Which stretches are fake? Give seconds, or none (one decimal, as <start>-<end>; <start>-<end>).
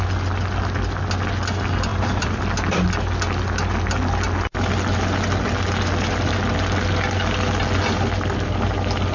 1.9-2.4